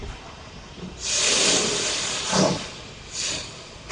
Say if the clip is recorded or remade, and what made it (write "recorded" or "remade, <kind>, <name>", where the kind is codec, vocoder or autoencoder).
recorded